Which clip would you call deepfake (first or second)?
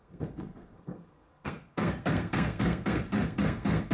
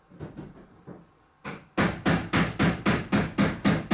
first